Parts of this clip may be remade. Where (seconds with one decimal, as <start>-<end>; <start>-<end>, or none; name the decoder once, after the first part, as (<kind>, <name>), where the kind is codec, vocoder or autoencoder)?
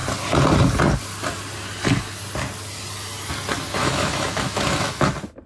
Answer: 3.8-4.9 (autoencoder, DAC-VAE)